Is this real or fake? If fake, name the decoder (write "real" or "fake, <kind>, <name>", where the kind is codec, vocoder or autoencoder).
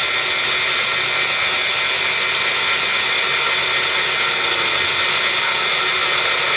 real